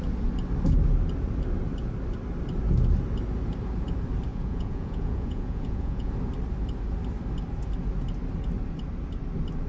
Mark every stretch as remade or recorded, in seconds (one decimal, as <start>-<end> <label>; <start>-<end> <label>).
0.0-4.3 recorded; 4.3-6.1 remade; 6.1-9.7 recorded